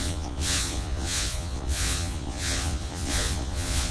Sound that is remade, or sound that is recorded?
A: remade